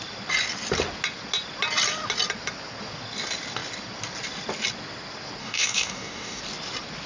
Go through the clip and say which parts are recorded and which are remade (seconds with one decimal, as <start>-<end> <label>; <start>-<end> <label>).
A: 0.0-5.4 recorded; 5.4-6.4 remade; 6.4-7.1 recorded